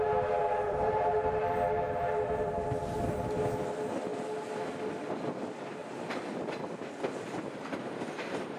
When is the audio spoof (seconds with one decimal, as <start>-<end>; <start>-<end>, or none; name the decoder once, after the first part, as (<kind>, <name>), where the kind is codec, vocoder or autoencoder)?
0.4-1.5 (vocoder, BigVGAN v2)